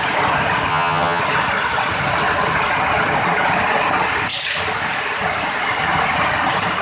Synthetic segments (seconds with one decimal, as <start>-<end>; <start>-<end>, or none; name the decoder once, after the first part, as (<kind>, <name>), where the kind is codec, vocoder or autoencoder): 0.7-1.2 (vocoder, HiFi-GAN)